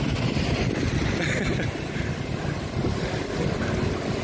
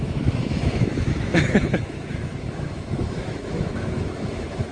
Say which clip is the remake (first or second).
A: second